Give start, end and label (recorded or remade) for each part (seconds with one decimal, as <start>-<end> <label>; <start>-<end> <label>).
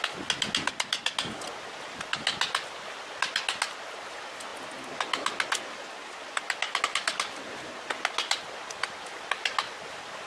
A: 0.0-10.3 recorded